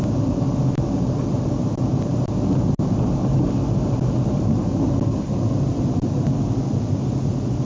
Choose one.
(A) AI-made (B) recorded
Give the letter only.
B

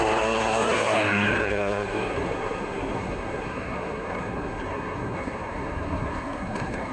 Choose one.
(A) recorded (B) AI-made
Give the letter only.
B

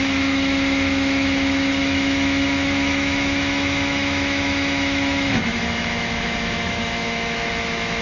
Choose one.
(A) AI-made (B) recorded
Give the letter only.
A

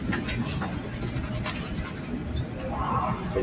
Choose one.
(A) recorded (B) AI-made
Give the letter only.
A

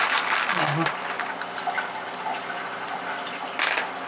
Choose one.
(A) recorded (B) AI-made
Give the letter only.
B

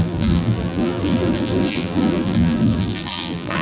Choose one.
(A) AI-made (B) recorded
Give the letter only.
A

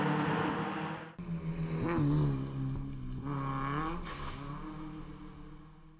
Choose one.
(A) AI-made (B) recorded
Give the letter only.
B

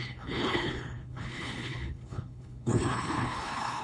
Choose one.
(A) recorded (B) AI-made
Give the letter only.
B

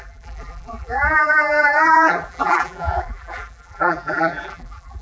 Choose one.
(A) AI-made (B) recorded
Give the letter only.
A